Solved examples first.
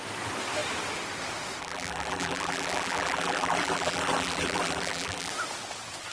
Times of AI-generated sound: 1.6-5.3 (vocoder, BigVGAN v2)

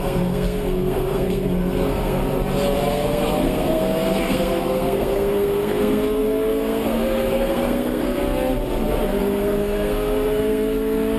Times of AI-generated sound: 0.0-2.2 (codec, SNAC); 2.9-8.2; 9.2-11.2

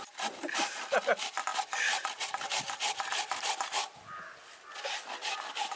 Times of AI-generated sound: none

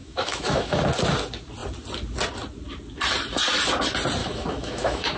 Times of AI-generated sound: 0.0-0.8 (autoencoder, DAC-VAE); 4.2-5.2

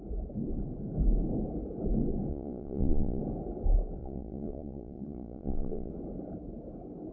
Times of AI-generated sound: 2.3-3.2 (vocoder, Vocos); 4.0-5.9